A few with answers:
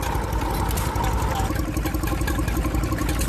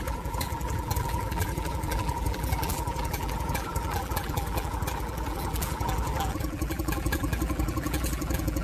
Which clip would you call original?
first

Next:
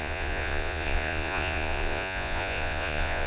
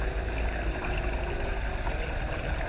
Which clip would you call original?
second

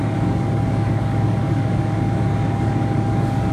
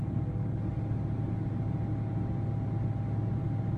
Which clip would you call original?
second